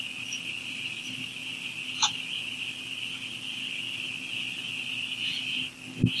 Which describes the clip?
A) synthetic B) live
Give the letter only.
B